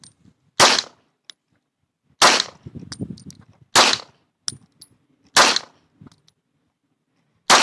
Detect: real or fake real